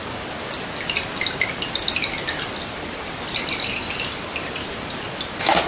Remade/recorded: recorded